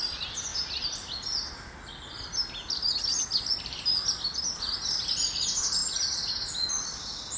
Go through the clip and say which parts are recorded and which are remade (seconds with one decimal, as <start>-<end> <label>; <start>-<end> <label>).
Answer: 0.0-7.4 recorded